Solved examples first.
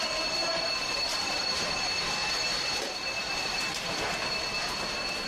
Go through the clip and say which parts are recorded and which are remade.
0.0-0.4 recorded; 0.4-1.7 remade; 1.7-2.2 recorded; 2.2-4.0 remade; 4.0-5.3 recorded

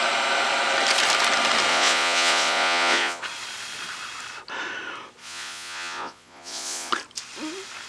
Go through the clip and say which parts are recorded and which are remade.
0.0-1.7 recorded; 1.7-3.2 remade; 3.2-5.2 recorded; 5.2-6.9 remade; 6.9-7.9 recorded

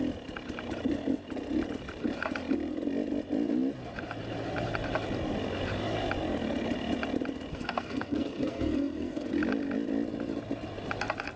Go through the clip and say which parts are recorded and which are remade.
0.0-7.5 recorded; 7.5-9.3 remade; 9.3-11.4 recorded

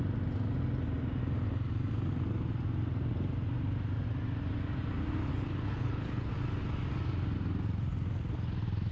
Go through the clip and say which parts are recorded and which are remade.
0.0-5.3 recorded; 5.3-6.3 remade; 6.3-8.9 recorded